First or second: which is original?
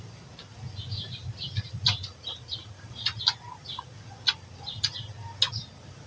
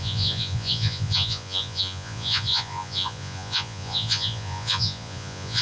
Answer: first